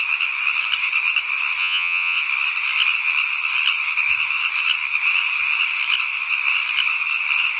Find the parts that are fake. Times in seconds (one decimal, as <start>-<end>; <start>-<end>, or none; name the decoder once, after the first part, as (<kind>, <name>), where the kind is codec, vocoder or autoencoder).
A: 1.6-2.2 (vocoder, Vocos)